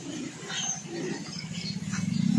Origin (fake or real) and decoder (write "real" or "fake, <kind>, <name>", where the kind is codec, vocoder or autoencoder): real